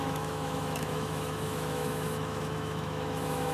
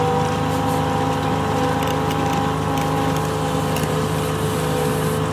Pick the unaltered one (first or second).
second